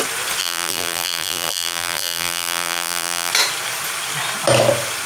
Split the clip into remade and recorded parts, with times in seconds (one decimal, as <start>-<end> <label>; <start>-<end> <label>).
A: 0.0-0.4 recorded; 0.4-3.3 remade; 3.3-5.1 recorded